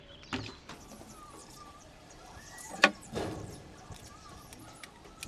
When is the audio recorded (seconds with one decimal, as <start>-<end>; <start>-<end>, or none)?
0.0-1.4; 4.6-5.3

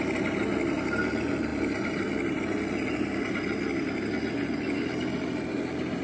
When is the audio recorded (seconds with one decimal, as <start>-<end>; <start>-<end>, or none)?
0.0-1.5; 2.4-6.0

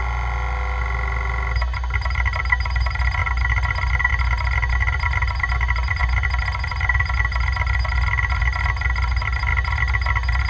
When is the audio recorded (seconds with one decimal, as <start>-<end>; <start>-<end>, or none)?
0.0-10.5